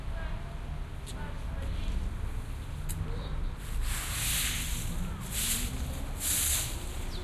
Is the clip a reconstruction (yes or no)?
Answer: no